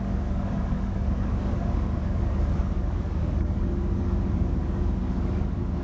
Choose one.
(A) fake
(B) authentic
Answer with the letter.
A